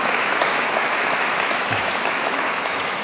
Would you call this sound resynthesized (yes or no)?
yes